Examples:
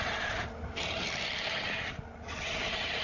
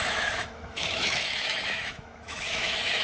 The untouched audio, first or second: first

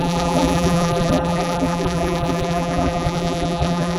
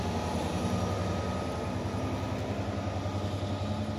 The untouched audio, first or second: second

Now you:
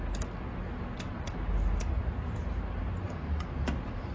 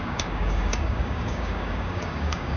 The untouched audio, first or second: first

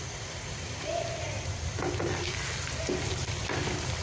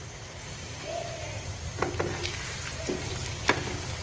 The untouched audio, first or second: second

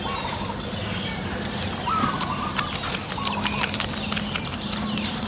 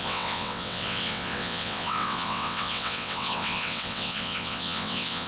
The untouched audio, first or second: first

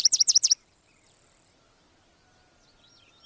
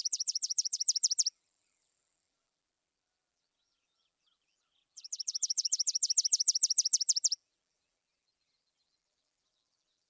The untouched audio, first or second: first